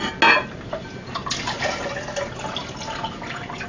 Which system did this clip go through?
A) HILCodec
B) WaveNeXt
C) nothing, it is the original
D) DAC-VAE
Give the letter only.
C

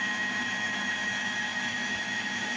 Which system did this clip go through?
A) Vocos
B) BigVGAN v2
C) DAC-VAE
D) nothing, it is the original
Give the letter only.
C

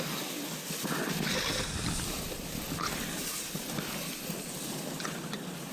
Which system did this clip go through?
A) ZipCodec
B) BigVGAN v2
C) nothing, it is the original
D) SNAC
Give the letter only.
C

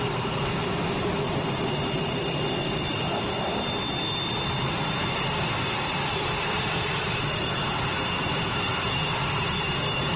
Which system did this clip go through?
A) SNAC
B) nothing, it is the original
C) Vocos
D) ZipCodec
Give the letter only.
B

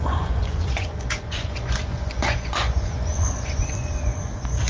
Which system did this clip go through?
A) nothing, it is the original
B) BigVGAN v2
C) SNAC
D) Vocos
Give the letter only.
D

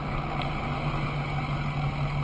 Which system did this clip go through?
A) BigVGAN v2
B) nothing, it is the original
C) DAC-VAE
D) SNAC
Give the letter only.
B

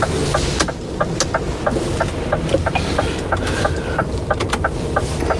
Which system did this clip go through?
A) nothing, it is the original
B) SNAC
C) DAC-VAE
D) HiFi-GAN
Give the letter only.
A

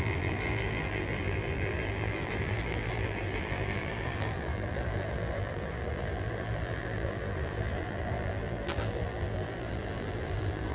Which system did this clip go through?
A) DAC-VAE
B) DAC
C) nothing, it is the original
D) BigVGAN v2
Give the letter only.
D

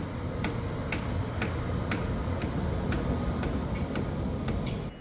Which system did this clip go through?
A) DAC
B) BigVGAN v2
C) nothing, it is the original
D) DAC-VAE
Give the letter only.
C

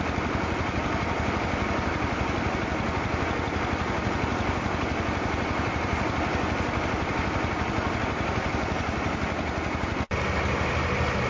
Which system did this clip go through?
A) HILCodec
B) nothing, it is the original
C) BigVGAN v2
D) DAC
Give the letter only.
B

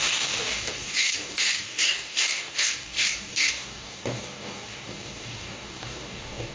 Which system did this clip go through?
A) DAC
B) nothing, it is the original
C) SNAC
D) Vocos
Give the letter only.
A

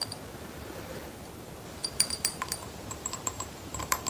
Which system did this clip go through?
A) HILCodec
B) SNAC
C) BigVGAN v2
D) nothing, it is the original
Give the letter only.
C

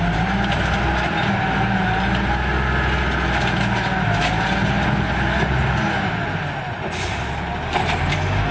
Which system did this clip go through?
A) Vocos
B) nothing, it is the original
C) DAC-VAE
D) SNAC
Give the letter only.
B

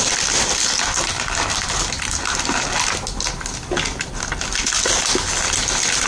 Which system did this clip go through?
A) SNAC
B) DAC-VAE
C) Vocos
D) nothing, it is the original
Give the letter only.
D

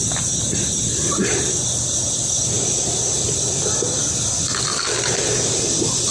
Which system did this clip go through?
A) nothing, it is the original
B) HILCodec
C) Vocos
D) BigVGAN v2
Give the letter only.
A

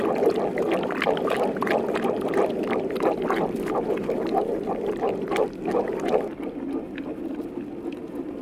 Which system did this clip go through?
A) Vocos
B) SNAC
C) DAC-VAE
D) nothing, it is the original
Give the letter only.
D